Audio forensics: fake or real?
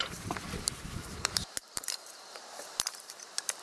fake